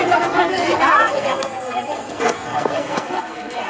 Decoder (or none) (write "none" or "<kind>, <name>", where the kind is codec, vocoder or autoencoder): codec, SNAC